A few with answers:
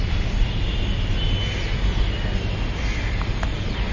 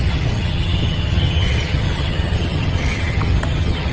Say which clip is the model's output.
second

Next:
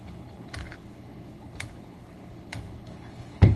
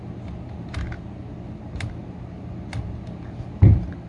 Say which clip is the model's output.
first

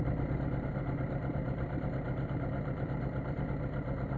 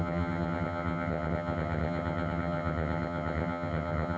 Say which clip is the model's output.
second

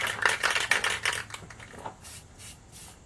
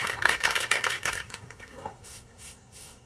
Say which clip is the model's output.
second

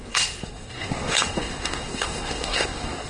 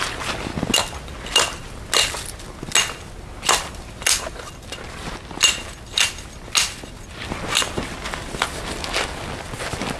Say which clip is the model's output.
first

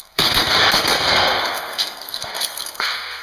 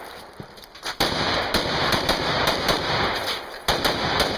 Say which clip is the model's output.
first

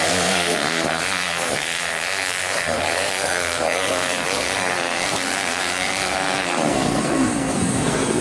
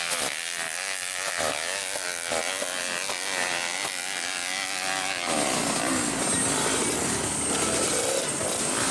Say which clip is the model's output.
first